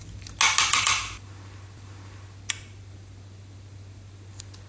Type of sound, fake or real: real